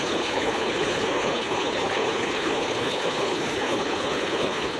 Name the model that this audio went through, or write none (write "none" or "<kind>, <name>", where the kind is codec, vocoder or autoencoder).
codec, HILCodec